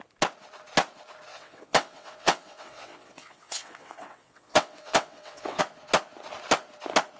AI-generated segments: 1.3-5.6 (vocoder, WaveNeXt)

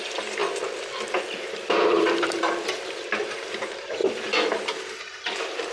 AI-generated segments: 0.0-4.0 (vocoder, BigVGAN v2); 5.0-5.7

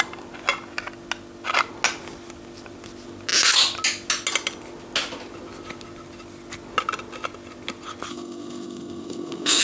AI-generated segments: 8.1-9.6 (codec, SNAC)